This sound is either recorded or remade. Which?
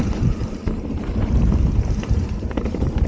remade